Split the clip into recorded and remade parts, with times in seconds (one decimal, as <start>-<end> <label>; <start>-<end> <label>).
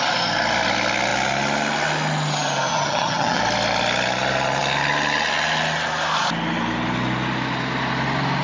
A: 0.0-2.7 recorded; 2.7-3.4 remade; 3.4-8.4 recorded